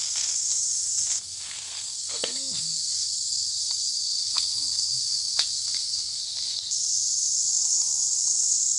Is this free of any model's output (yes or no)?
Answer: no